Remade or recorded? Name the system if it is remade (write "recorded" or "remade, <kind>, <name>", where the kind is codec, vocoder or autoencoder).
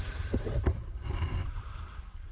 remade, vocoder, BigVGAN v2